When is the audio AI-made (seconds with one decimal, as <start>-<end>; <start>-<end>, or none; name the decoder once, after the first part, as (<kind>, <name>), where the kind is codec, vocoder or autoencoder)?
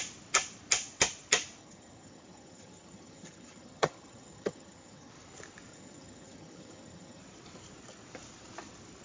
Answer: 1.6-5.1 (vocoder, HiFi-GAN); 5.7-7.2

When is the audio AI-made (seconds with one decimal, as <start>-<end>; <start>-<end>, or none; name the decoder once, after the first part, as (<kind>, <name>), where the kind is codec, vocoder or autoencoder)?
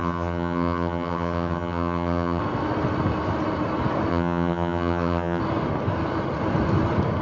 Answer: 0.0-2.4 (vocoder, HiFi-GAN); 4.1-5.4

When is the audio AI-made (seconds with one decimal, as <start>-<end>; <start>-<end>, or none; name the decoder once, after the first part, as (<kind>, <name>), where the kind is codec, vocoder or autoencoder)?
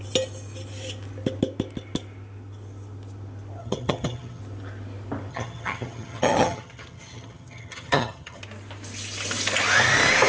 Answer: 3.6-4.4 (vocoder, HiFi-GAN); 5.3-8.4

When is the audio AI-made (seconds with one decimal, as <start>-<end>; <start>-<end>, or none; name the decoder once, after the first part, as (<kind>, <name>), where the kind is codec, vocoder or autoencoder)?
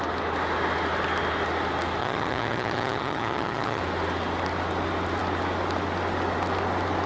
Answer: 2.0-3.8 (vocoder, HiFi-GAN)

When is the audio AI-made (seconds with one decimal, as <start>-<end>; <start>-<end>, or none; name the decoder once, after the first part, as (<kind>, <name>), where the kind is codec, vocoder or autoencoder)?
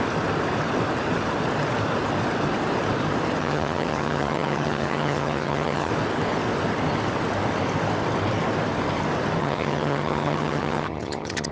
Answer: 3.4-5.9 (vocoder, HiFi-GAN); 9.4-11.5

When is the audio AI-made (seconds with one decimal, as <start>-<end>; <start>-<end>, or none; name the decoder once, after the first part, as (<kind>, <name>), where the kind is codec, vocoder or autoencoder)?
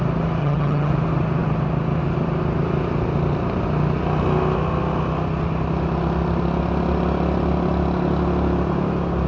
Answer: 0.4-0.9 (vocoder, HiFi-GAN)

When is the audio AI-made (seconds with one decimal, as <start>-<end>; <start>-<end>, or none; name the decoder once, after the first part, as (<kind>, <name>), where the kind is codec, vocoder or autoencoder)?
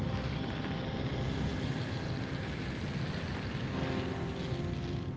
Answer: none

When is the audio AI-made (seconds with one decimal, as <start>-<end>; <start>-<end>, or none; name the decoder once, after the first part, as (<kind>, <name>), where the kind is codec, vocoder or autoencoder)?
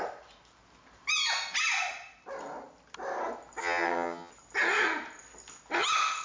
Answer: 3.6-4.3 (vocoder, HiFi-GAN)